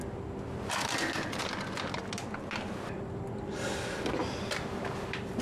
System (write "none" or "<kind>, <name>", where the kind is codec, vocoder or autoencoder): none